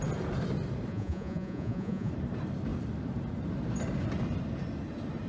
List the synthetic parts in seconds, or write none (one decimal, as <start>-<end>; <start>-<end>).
0.9-2.1